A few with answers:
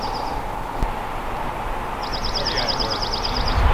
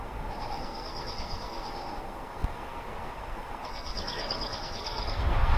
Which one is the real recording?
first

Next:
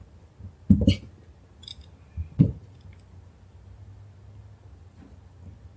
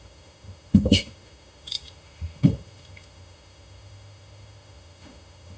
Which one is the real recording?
first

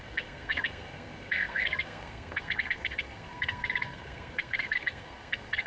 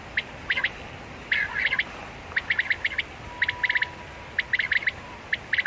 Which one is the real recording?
second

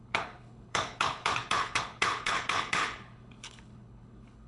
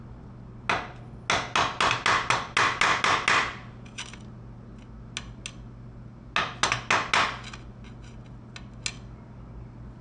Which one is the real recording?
second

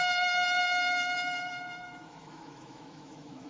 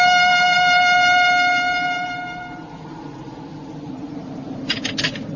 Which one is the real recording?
second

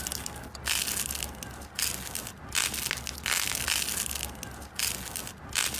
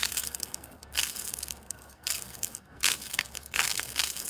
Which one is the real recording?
first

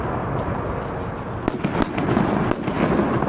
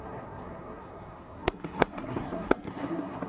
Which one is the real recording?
first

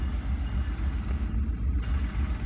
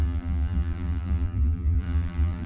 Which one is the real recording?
first